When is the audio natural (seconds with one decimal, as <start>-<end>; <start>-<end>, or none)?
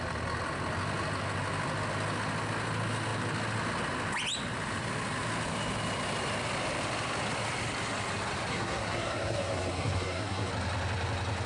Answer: 0.0-8.5; 10.5-11.5